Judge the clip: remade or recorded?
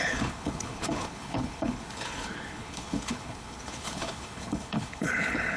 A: remade